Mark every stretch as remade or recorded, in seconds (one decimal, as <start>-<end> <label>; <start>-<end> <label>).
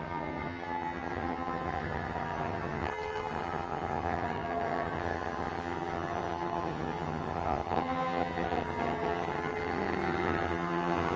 0.0-11.2 remade